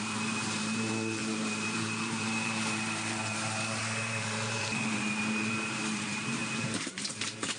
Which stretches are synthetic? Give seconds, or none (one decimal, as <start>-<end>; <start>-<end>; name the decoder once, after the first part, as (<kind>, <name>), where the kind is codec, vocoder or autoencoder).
0.0-7.6 (vocoder, BigVGAN v2)

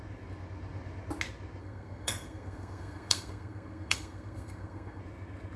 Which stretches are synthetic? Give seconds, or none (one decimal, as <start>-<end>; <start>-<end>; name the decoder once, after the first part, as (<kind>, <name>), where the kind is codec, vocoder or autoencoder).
1.6-5.0 (codec, SNAC)

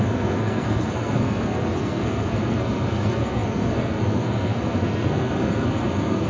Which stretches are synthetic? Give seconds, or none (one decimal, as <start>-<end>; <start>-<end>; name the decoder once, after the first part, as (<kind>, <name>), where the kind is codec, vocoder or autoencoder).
0.0-6.3 (codec, SNAC)

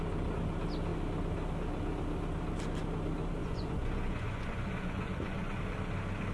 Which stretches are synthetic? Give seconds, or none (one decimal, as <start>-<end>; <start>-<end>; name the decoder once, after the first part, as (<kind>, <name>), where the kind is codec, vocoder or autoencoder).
3.4-5.6 (vocoder, Vocos)

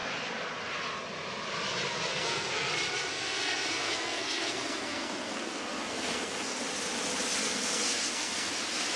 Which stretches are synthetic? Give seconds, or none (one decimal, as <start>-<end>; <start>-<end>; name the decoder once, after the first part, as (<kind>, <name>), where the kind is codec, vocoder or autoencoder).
2.1-2.7 (codec, SNAC); 3.1-6.6; 7.4-8.5

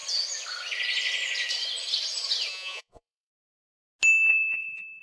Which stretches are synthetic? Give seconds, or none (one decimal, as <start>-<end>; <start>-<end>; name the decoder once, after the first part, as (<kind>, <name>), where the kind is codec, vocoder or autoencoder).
2.5-3.3 (vocoder, Vocos); 4.3-5.0

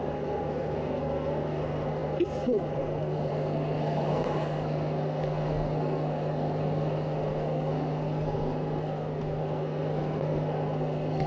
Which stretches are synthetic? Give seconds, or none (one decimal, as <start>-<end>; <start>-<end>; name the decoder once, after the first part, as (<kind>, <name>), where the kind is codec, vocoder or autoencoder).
0.0-11.3 (codec, SNAC)